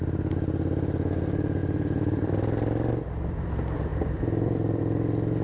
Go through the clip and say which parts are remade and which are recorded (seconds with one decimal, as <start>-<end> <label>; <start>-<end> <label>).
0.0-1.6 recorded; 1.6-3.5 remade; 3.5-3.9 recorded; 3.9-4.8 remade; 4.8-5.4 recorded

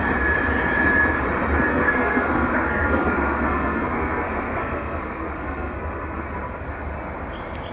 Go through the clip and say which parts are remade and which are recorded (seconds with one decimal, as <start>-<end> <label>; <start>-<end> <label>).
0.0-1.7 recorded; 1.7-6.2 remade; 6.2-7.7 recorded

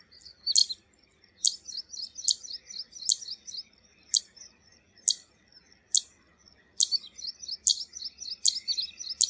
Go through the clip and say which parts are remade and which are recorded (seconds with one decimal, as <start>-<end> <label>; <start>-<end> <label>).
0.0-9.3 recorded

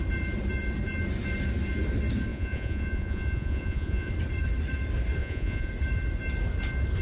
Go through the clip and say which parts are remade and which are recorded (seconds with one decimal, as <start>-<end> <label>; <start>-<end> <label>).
0.0-2.3 recorded; 2.3-4.1 remade; 4.1-5.2 recorded; 5.2-5.7 remade; 5.7-7.0 recorded